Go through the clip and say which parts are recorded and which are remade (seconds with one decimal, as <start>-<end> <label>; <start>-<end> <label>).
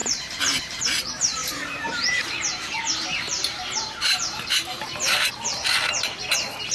0.0-0.8 remade; 0.8-1.4 recorded; 1.4-5.3 remade; 5.3-6.7 recorded